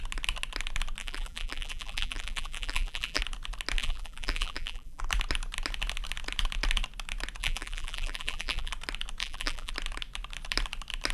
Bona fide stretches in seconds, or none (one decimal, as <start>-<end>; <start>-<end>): 0.0-1.0; 3.2-3.8; 5.0-7.4; 8.7-9.2; 9.7-11.1